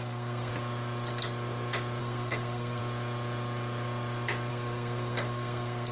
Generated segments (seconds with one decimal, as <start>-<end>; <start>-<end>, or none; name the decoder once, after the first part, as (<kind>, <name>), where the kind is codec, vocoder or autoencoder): 0.0-0.5 (codec, SNAC); 2.0-2.8; 4.5-5.9